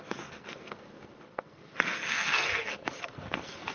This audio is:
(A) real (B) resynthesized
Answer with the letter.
B